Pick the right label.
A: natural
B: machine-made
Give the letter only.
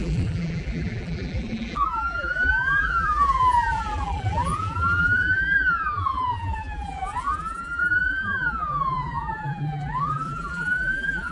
B